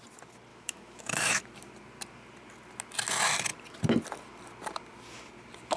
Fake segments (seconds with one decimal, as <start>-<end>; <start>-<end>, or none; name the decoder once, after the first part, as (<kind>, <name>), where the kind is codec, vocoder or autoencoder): 0.5-1.4 (autoencoder, DAC-VAE)

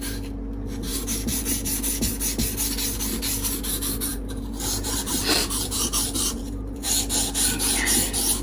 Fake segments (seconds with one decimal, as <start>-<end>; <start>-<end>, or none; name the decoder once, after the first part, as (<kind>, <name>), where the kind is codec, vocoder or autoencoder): 0.9-1.4 (vocoder, BigVGAN v2); 4.1-6.9